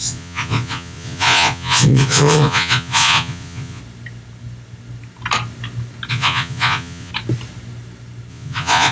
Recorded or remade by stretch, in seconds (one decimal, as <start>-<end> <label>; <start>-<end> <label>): 0.0-3.8 remade; 3.8-6.1 recorded; 6.1-7.1 remade; 7.1-8.3 recorded; 8.3-8.9 remade